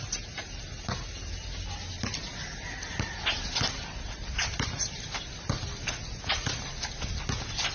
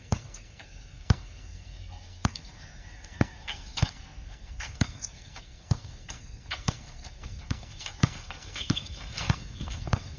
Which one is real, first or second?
first